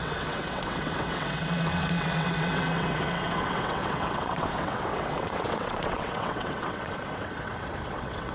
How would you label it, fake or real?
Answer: fake